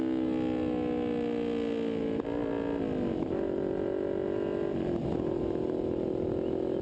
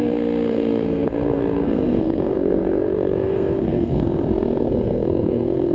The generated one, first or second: second